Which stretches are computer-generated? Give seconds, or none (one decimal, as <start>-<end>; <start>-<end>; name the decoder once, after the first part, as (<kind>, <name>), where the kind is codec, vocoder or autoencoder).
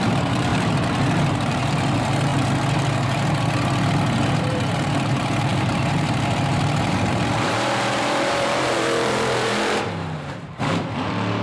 0.0-2.3 (vocoder, BigVGAN v2); 4.3-11.4